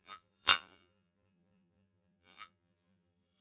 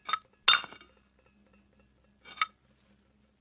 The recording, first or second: second